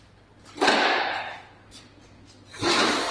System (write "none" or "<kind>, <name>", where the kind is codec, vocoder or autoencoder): none